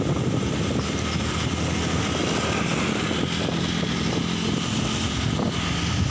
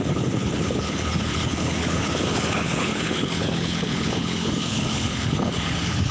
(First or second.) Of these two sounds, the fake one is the second